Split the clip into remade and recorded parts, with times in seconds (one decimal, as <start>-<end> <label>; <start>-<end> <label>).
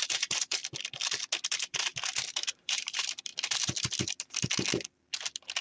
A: 0.0-0.6 remade; 0.6-1.5 recorded; 1.5-1.9 remade; 1.9-2.5 recorded; 2.5-3.3 remade; 3.3-5.6 recorded